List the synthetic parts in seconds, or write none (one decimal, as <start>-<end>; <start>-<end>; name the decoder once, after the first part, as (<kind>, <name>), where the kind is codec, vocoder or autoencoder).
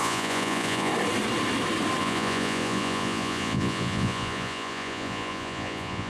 0.0-0.9 (vocoder, Vocos); 2.0-6.1